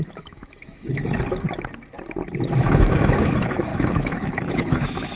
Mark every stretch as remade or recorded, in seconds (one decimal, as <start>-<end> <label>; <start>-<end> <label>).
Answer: 0.0-1.0 remade; 1.0-2.6 recorded; 2.6-5.2 remade